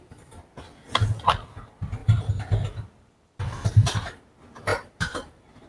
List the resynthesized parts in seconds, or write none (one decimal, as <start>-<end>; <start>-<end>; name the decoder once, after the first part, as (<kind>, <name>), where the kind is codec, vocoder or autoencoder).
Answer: 2.0-4.2 (vocoder, BigVGAN v2); 4.7-5.7